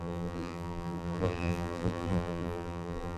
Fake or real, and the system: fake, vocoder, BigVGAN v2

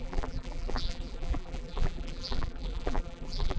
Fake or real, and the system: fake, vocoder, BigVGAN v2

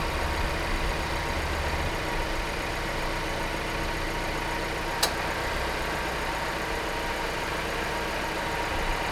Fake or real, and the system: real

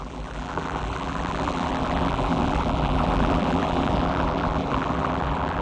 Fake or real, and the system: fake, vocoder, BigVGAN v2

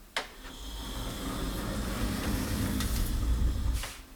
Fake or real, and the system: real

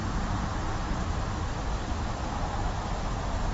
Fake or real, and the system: real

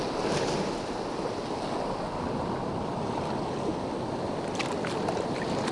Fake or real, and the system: real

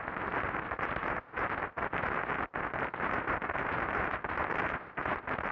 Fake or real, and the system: fake, vocoder, BigVGAN v2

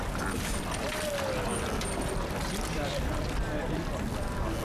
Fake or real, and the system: real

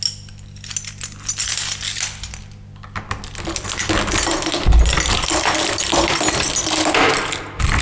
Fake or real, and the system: real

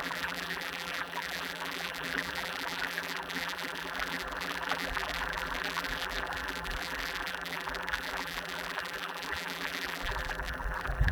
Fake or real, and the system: fake, vocoder, BigVGAN v2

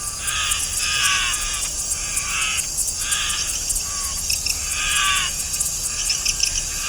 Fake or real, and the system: real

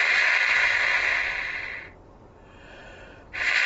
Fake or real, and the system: real